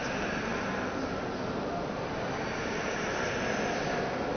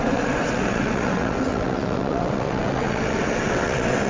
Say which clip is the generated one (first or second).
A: second